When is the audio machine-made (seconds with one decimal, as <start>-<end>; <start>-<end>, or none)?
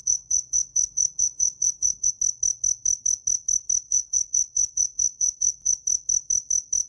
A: 0.0-2.1; 3.9-5.7